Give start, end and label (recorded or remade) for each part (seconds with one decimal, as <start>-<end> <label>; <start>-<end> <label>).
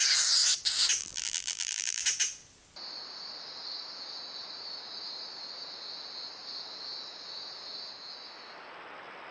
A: 0.0-1.0 recorded; 1.0-2.0 remade; 2.0-9.3 recorded